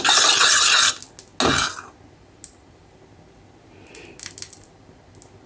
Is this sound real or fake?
real